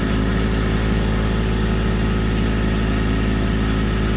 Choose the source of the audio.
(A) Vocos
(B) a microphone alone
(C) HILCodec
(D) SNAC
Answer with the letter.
B